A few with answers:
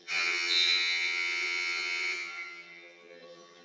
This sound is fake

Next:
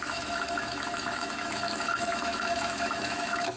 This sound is fake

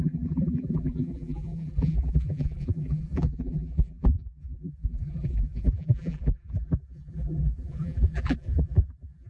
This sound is fake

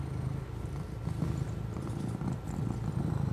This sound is real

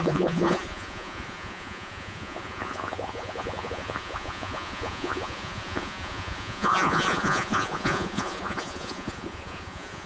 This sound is fake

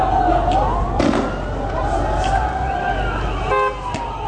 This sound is real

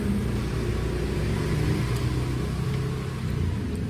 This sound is real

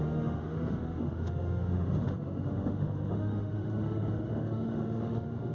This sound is fake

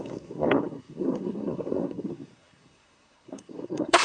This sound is fake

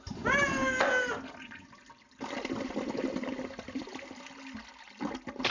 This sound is real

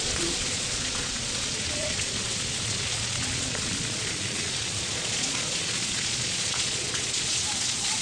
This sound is fake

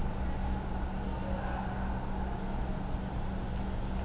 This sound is real